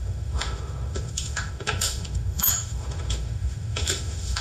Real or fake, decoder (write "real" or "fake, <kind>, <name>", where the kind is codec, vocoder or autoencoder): fake, autoencoder, DAC-VAE